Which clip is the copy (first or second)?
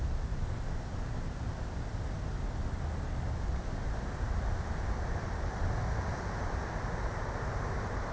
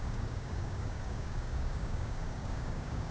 second